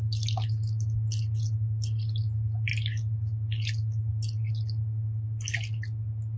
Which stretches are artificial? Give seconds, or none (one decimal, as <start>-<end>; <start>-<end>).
none